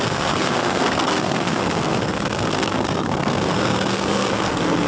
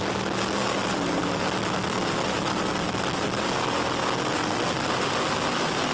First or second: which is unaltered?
second